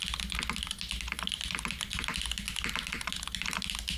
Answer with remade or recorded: recorded